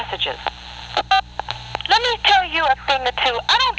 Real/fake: real